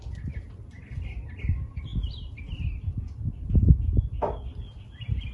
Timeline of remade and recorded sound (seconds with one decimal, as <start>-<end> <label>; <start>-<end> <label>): 0.0-5.3 recorded